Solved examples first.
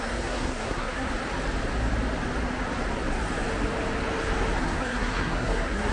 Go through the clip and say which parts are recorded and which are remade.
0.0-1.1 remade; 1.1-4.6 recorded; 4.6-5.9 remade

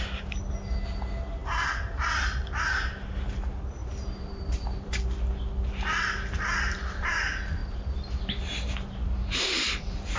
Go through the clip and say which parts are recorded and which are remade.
0.0-3.8 recorded; 3.8-4.9 remade; 4.9-7.6 recorded; 7.6-10.2 remade

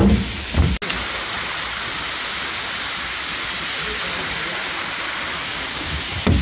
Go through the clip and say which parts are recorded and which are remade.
0.0-5.5 recorded; 5.5-6.0 remade; 6.0-6.4 recorded

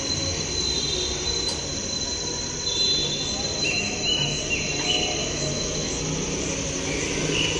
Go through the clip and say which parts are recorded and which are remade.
0.0-3.6 recorded; 3.6-4.4 remade; 4.4-5.2 recorded; 5.2-5.9 remade; 5.9-7.6 recorded

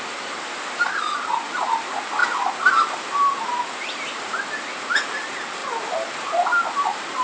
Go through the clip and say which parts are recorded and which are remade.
0.0-7.2 recorded

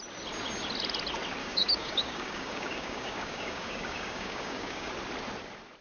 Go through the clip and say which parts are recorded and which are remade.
0.0-1.4 recorded; 1.4-4.9 remade; 4.9-5.8 recorded

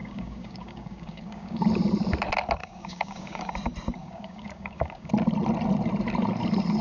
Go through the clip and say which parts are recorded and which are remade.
0.0-1.6 remade; 1.6-2.6 recorded; 2.6-3.5 remade; 3.5-4.0 recorded; 4.0-5.1 remade; 5.1-6.8 recorded